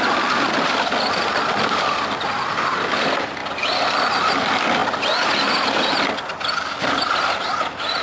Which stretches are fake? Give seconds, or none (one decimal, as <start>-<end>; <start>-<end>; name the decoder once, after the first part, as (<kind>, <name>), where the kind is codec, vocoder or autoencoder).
none